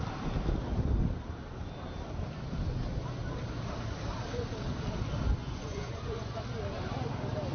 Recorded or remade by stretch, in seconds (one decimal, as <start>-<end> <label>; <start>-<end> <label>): 0.0-5.4 recorded; 5.4-6.4 remade; 6.4-7.5 recorded